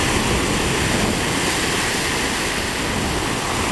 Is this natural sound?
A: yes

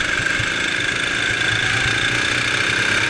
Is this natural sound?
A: yes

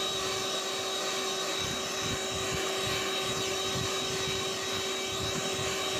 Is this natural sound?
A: yes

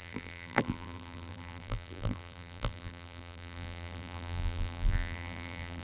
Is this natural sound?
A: no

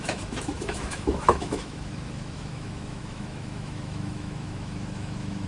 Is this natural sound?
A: no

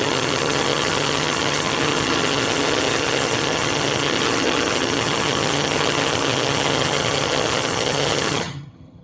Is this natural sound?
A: no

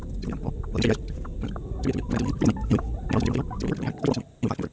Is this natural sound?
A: yes